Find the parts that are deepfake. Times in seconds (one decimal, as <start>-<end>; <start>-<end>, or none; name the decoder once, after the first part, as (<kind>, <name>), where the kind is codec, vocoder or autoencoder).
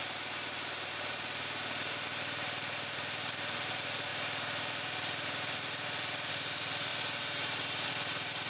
0.0-6.9 (vocoder, BigVGAN v2); 7.9-8.5